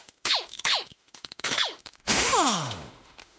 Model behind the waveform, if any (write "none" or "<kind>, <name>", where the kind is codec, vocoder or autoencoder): autoencoder, DAC-VAE